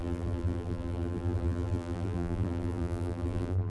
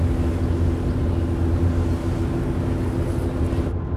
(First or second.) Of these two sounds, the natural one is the second